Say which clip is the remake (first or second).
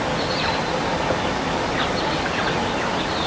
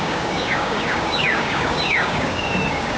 second